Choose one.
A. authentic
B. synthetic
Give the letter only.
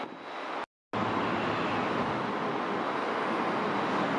A